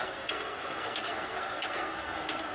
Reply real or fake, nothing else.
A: fake